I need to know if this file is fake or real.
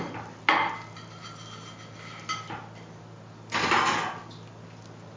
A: real